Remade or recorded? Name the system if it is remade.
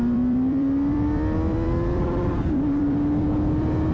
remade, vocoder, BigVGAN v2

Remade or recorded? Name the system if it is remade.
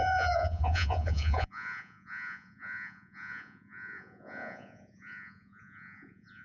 remade, vocoder, Vocos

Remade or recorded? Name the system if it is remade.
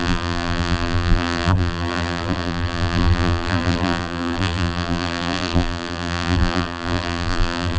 remade, vocoder, BigVGAN v2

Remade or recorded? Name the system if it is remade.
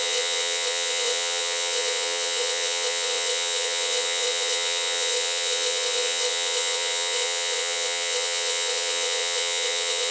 remade, vocoder, WaveNeXt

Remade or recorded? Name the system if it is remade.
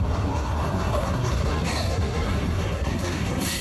remade, codec, SNAC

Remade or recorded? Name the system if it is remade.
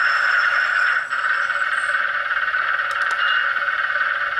recorded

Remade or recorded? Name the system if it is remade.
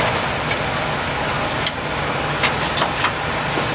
recorded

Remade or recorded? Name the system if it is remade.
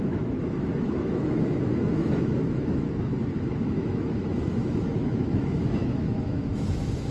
remade, autoencoder, DAC-VAE